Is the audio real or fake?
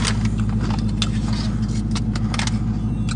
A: real